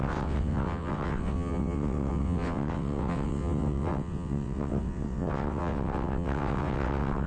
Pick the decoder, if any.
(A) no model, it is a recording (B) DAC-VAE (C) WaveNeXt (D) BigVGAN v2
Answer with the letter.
C